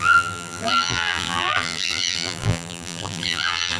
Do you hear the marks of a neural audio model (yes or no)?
yes